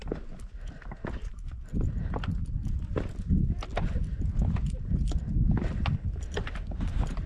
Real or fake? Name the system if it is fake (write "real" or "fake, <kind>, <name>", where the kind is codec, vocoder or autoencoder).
real